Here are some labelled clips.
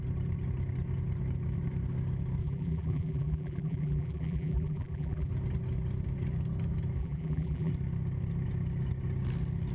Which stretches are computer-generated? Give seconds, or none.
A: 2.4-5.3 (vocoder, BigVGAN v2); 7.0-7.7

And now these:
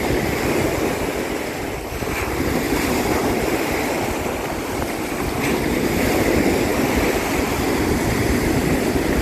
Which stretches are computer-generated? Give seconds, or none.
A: none